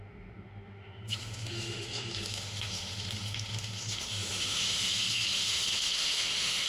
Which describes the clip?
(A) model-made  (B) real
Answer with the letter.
A